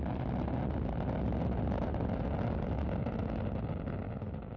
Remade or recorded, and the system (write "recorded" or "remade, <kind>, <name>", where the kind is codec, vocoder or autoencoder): recorded